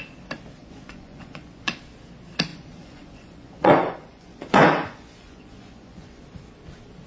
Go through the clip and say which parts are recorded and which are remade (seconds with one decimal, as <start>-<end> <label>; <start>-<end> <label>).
0.0-0.6 recorded; 0.6-1.8 remade; 1.8-2.5 recorded; 2.5-6.2 remade; 6.2-7.1 recorded